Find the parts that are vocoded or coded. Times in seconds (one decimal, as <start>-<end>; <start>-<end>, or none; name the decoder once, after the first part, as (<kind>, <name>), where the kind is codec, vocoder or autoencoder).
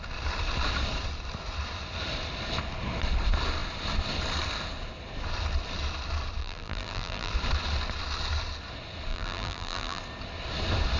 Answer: 6.4-7.3 (vocoder, BigVGAN v2); 9.1-10.0